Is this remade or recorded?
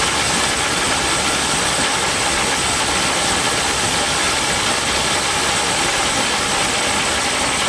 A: recorded